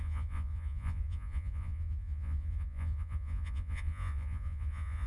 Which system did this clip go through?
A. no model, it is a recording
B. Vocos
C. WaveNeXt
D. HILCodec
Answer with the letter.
B